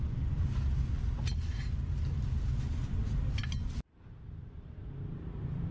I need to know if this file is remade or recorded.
recorded